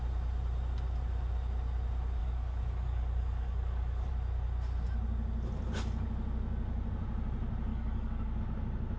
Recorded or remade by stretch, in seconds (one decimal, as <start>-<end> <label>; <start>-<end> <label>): 0.0-2.2 recorded; 2.2-4.1 remade; 4.1-7.7 recorded; 7.7-8.4 remade; 8.4-9.0 recorded